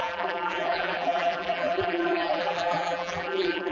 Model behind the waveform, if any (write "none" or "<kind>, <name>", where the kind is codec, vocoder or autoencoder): vocoder, BigVGAN v2